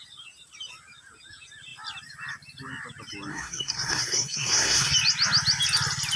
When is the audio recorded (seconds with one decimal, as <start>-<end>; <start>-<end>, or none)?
0.0-3.3; 4.9-6.2